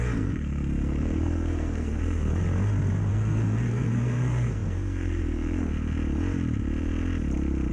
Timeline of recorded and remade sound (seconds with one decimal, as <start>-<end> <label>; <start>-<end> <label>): 0.0-2.3 remade; 2.3-3.1 recorded; 3.1-5.7 remade; 5.7-7.7 recorded

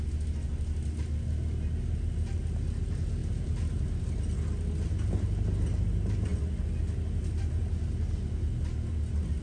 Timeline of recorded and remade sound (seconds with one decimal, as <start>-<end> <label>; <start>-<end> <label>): 0.0-3.2 recorded; 3.2-4.0 remade; 4.0-9.4 recorded